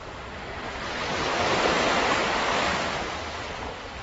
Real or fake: real